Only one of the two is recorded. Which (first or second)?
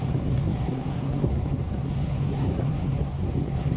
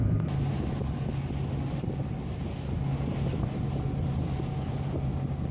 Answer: second